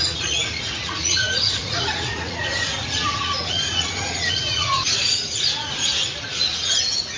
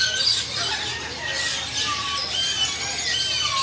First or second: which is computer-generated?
first